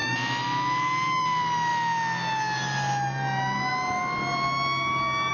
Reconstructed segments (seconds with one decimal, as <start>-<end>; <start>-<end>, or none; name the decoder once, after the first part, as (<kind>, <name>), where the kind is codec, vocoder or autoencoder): none